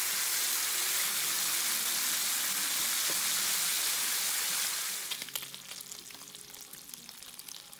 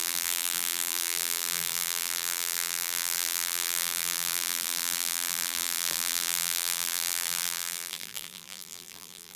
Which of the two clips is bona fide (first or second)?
first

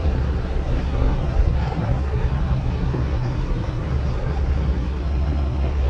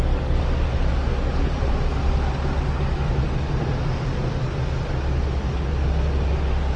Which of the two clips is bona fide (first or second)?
second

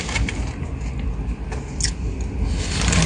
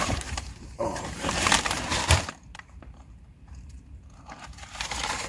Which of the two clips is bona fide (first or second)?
first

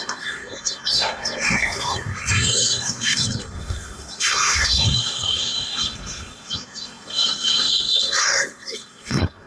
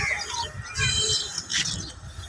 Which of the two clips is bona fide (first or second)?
second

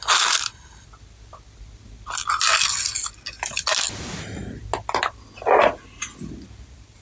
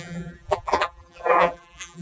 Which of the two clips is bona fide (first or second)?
first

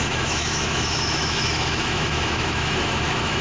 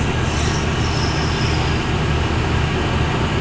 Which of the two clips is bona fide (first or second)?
second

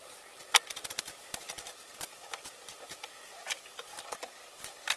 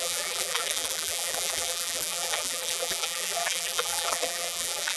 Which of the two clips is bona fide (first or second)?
first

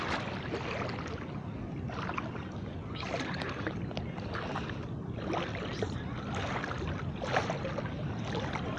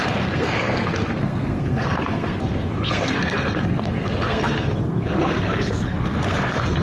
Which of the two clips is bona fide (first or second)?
first